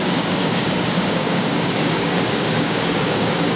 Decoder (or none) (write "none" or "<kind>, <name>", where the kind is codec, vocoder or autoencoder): codec, DAC